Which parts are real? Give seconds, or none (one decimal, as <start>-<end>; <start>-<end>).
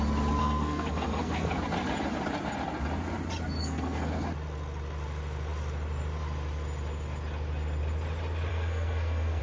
0.0-0.4; 1.6-3.6; 4.1-8.5